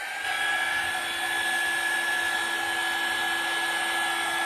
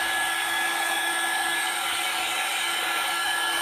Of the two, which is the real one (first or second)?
first